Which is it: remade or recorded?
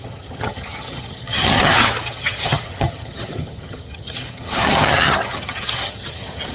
remade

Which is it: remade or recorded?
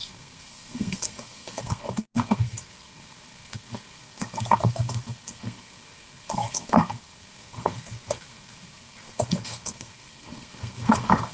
remade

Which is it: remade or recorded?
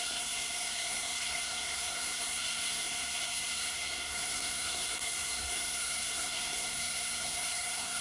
remade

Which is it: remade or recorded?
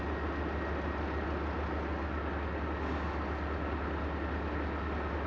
recorded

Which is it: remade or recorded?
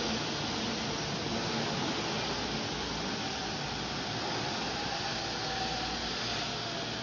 recorded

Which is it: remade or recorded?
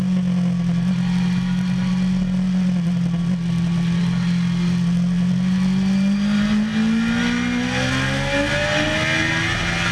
recorded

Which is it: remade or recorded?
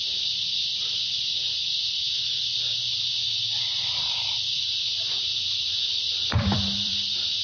remade